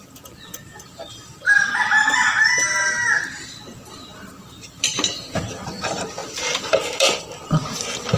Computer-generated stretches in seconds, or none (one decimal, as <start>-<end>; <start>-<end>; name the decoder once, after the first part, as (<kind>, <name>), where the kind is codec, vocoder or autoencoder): 4.1-5.4 (vocoder, BigVGAN v2)